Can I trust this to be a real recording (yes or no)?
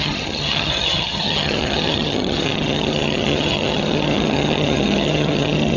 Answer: no